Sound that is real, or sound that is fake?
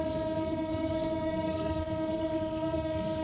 fake